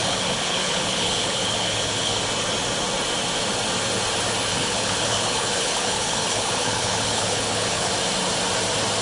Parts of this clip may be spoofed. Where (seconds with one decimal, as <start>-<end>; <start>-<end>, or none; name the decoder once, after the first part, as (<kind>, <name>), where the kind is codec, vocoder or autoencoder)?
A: 0.0-2.2 (codec, HILCodec); 4.5-7.9